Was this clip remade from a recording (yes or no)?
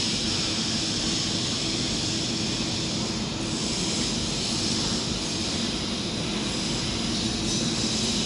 no